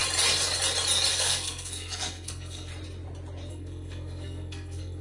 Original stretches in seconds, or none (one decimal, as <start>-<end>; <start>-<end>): 0.0-1.1; 2.7-3.5